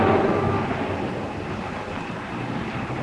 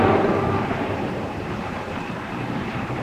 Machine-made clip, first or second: second